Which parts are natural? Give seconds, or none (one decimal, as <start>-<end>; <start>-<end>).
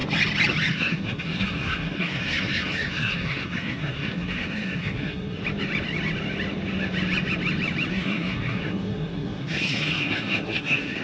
0.0-0.7; 5.4-7.9